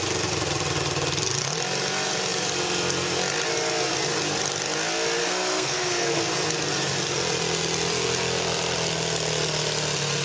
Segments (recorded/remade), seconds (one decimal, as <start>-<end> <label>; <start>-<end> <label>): 0.0-5.2 recorded; 5.2-6.2 remade; 6.2-10.2 recorded